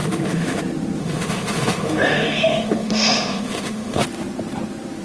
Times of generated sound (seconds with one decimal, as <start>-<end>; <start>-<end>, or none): 0.0-0.6; 1.0-4.0